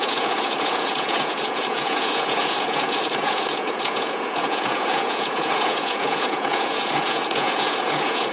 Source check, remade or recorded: remade